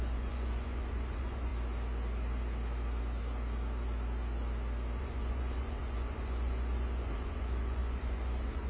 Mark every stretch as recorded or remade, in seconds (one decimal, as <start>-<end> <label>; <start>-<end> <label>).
0.0-1.5 remade; 1.5-5.0 recorded; 5.0-8.7 remade